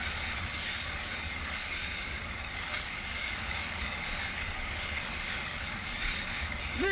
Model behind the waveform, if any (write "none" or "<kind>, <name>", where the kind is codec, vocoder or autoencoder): codec, DAC